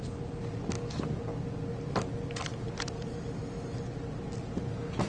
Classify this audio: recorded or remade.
recorded